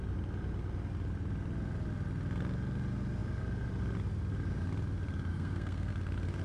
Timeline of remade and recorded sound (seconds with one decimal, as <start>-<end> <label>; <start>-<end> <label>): 0.0-5.3 recorded; 5.3-5.9 remade; 5.9-6.4 recorded